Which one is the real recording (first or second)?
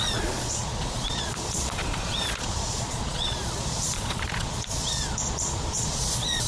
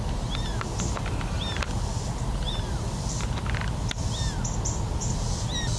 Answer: second